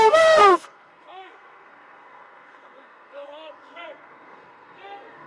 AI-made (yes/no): yes